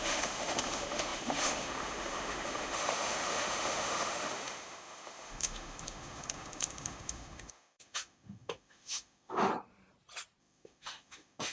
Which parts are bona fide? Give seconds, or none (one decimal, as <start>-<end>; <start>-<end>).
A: 9.5-10.4